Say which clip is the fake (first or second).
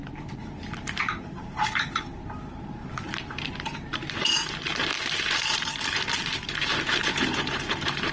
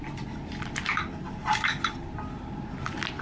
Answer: first